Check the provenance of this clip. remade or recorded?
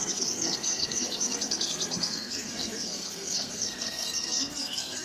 remade